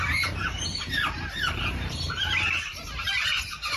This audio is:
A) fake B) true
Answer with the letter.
A